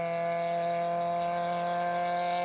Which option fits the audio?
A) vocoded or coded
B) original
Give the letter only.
B